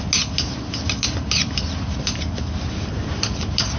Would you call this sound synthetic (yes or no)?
no